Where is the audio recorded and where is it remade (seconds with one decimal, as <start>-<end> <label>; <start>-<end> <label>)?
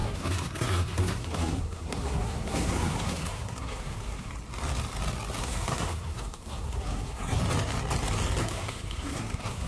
0.0-4.3 remade; 4.3-5.4 recorded; 5.4-7.4 remade; 7.4-8.4 recorded; 8.4-9.7 remade